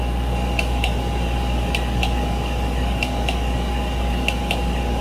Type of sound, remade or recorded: remade